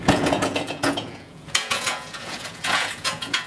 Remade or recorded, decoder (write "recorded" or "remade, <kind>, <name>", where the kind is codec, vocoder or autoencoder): remade, vocoder, Vocos